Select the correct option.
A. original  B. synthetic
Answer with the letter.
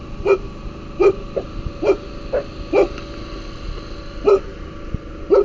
A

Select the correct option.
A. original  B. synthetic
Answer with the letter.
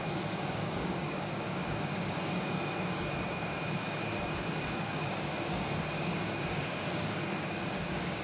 B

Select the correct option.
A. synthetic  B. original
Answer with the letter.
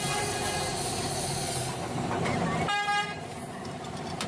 B